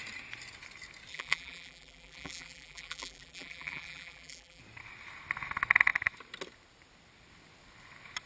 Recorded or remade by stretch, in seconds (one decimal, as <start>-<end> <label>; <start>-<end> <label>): 0.0-1.1 recorded; 1.1-4.6 remade; 4.6-8.3 recorded